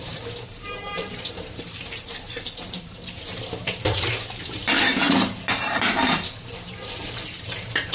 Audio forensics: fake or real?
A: fake